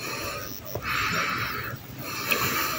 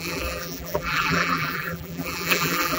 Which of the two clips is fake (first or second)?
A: second